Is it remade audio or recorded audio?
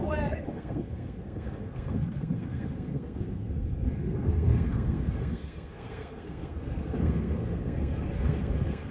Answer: remade